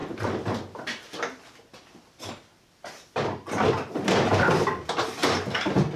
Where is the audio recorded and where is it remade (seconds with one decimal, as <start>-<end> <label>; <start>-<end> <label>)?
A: 0.0-6.0 recorded